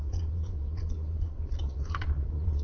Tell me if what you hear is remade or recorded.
remade